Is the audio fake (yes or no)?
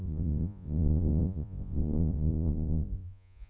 yes